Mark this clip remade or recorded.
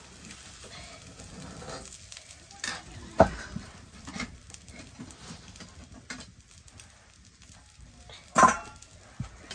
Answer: recorded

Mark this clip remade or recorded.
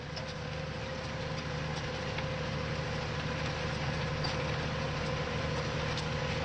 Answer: recorded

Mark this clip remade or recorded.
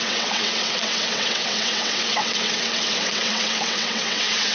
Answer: remade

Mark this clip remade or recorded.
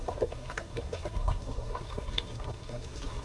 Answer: remade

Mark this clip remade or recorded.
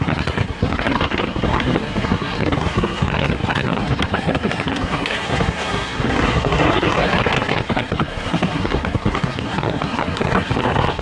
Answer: remade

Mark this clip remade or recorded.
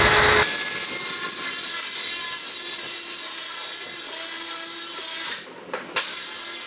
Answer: recorded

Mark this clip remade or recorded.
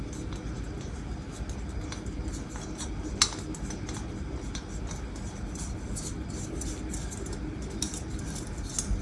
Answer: recorded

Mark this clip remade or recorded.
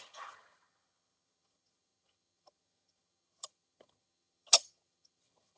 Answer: remade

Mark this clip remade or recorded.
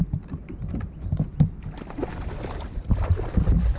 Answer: recorded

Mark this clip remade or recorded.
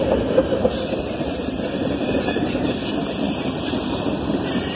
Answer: remade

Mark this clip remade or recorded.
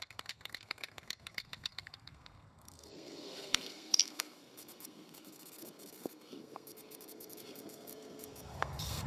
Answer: remade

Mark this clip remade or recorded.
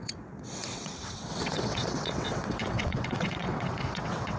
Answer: remade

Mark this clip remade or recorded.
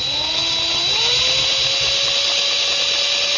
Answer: recorded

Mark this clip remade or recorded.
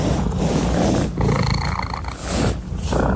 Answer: recorded